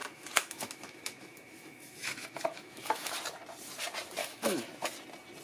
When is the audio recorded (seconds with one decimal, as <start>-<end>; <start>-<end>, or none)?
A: 3.2-4.2; 4.7-5.4